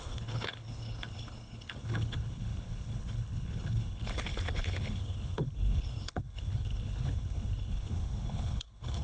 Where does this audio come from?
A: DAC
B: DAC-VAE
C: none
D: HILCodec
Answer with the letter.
D